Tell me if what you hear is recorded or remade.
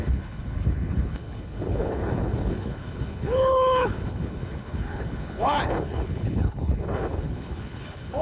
remade